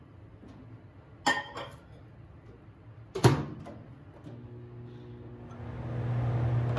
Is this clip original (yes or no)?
yes